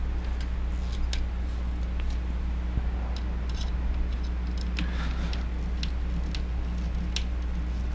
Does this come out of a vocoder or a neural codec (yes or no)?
no